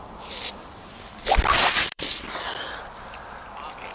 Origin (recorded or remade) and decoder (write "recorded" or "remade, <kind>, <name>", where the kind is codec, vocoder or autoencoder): remade, vocoder, BigVGAN v2